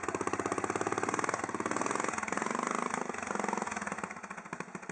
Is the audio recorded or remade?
recorded